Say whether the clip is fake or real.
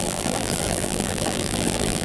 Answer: fake